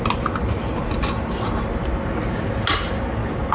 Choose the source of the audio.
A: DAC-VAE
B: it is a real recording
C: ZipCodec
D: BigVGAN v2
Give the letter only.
B